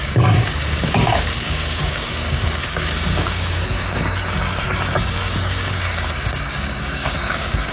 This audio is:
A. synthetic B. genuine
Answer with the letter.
A